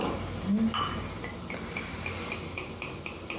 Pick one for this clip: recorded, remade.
remade